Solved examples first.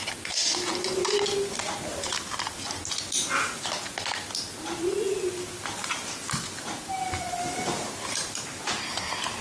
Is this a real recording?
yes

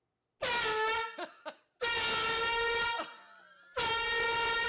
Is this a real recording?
yes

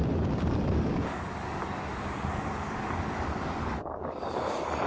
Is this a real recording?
no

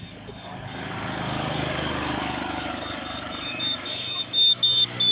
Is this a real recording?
no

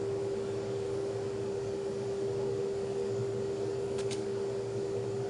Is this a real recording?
no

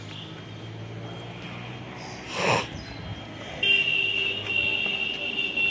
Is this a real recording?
yes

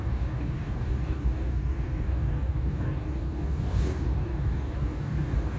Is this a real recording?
no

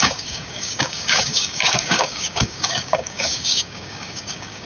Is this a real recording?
no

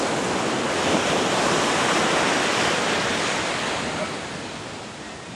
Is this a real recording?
yes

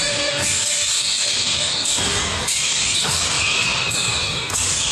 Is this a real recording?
no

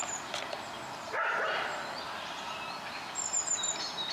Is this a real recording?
yes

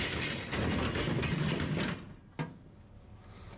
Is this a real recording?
yes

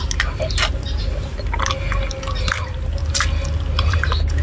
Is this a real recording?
yes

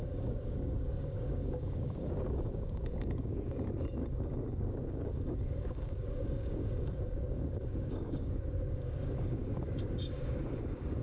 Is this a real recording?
no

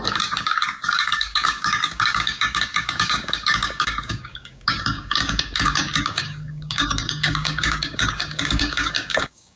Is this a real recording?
no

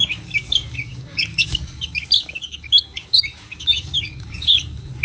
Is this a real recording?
no